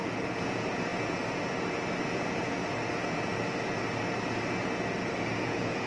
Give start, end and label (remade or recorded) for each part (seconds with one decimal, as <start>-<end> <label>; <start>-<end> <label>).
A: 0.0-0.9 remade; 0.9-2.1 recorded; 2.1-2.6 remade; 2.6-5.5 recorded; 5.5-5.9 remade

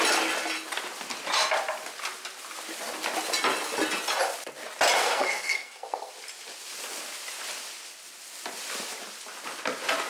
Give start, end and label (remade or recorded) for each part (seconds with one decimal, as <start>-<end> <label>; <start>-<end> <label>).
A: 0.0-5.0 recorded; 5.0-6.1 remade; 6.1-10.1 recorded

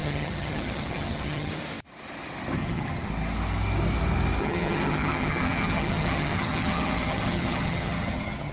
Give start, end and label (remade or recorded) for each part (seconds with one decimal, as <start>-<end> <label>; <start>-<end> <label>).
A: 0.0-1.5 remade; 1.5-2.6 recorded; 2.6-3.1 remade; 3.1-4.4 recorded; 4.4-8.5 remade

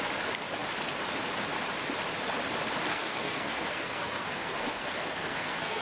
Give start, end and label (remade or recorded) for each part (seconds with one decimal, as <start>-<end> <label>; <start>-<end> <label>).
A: 0.0-2.9 recorded; 2.9-5.8 remade

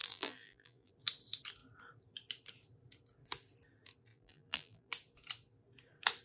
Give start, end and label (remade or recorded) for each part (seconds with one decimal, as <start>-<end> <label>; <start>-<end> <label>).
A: 0.0-0.9 remade; 0.9-4.1 recorded; 4.1-4.9 remade; 4.9-6.2 recorded

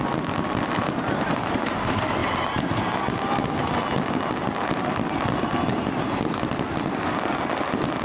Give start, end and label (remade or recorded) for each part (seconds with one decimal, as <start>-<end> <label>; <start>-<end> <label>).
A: 0.0-8.0 recorded